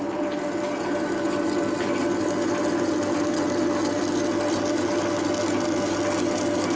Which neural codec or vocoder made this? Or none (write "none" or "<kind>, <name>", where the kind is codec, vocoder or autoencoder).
none